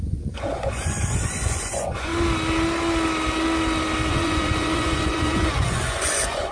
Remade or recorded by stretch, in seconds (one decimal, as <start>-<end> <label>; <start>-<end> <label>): 0.0-2.1 remade; 2.1-4.1 recorded; 4.1-6.5 remade